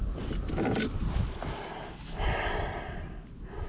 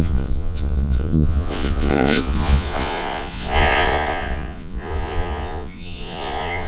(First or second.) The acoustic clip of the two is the first